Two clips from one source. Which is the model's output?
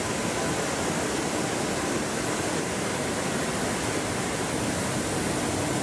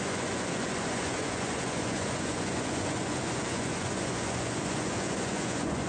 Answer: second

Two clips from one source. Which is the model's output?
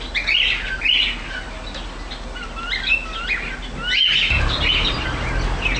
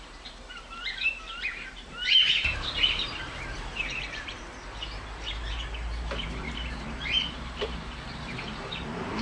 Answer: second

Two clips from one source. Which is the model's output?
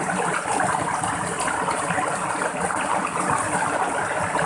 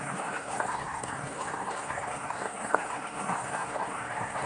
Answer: second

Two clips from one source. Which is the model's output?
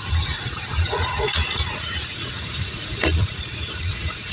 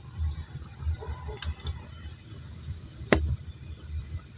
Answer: first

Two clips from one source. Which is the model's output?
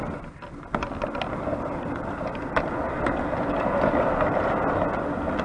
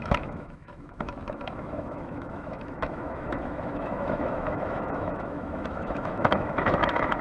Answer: second